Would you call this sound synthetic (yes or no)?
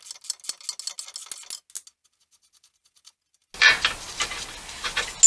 no